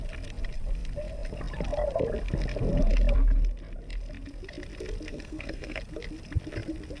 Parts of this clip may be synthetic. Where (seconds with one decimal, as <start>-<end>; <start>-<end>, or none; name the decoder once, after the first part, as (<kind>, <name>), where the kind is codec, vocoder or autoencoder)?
5.1-5.8 (codec, SNAC)